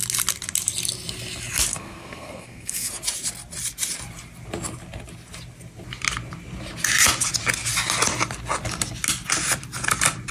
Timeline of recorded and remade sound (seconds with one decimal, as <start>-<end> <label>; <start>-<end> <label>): 0.0-1.7 recorded; 1.7-2.9 remade; 2.9-10.3 recorded